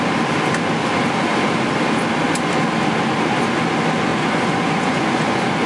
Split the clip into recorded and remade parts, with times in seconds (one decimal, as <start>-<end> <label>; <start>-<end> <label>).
0.0-4.1 recorded; 4.1-5.7 remade